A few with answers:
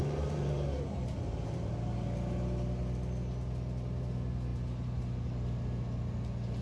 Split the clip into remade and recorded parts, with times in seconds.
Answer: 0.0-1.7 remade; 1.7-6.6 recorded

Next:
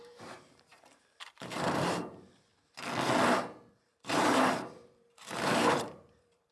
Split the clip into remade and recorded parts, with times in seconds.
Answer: 0.0-2.5 remade; 2.5-3.7 recorded; 3.7-6.5 remade